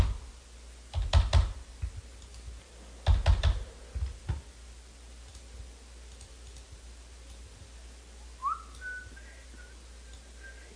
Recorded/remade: recorded